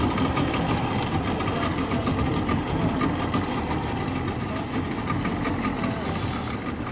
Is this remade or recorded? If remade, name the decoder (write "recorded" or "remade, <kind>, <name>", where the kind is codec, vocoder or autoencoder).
recorded